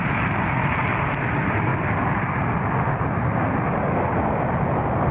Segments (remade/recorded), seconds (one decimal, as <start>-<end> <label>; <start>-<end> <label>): 0.0-5.1 recorded